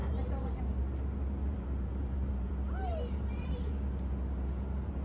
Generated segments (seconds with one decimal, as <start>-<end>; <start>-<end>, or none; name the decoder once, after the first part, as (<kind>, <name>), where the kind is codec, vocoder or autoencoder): 0.0-0.6 (vocoder, BigVGAN v2); 1.5-2.5; 2.9-3.7